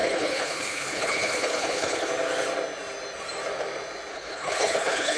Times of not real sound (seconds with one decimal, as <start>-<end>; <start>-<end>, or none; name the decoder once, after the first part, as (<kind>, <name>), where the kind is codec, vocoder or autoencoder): 0.0-2.1 (codec, HILCodec); 4.1-5.2